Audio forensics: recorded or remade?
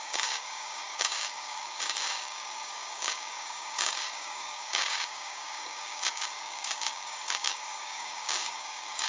remade